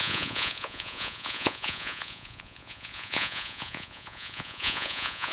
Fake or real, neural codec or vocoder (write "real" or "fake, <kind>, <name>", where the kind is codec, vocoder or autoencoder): fake, vocoder, Vocos